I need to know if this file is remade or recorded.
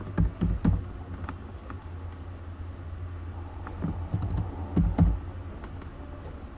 recorded